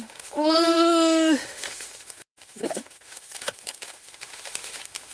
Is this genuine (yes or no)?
no